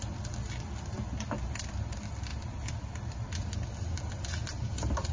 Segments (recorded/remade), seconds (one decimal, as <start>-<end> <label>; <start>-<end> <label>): 0.0-5.1 recorded